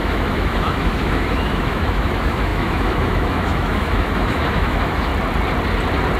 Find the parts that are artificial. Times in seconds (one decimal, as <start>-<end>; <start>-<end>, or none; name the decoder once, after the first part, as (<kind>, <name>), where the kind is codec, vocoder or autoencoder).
0.0-5.1 (autoencoder, DAC-VAE)